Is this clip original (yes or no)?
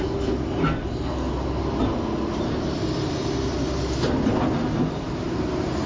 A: yes